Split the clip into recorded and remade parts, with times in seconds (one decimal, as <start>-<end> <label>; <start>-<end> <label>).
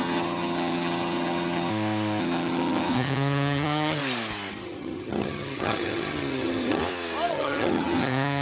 0.0-1.7 remade; 1.7-2.2 recorded; 2.2-4.0 remade; 4.0-4.5 recorded; 4.5-6.8 remade; 6.8-7.3 recorded; 7.3-8.4 remade